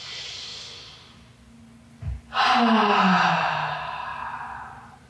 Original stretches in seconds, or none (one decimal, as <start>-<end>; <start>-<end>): 0.5-3.3; 4.1-4.6